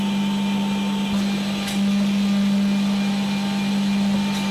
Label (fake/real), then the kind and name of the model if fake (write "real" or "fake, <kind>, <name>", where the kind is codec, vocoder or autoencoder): real